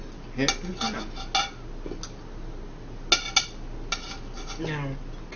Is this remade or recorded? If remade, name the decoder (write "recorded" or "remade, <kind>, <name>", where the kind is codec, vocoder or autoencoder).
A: recorded